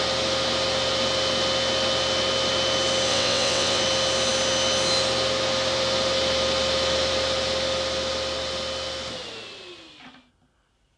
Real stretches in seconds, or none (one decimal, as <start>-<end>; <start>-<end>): 0.0-3.1; 3.8-11.0